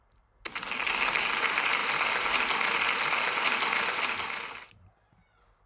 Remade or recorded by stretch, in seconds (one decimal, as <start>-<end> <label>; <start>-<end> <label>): 0.0-5.7 recorded